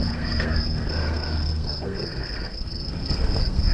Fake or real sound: fake